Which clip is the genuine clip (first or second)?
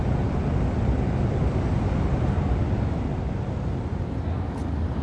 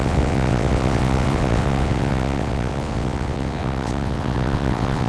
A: first